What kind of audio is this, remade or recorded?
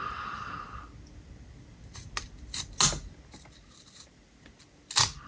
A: recorded